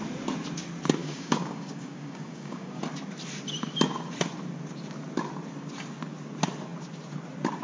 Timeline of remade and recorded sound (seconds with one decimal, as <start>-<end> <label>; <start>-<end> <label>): 0.0-1.0 recorded; 1.0-2.8 remade; 2.8-7.6 recorded